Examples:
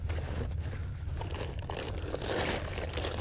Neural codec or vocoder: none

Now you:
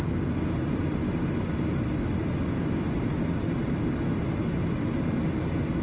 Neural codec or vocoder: none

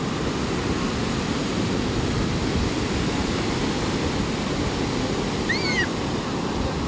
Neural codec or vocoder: none